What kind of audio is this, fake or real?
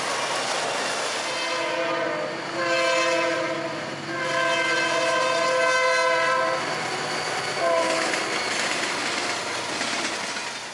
real